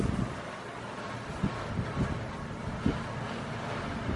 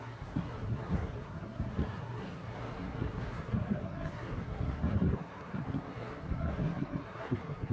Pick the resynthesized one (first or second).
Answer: second